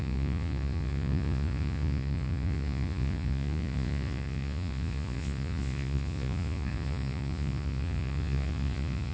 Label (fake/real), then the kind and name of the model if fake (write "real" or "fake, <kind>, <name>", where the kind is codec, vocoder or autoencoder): fake, vocoder, Vocos